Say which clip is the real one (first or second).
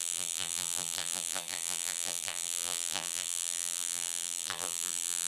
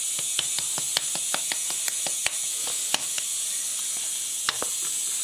second